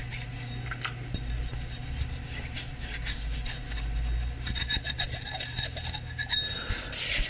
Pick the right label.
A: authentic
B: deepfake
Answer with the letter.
A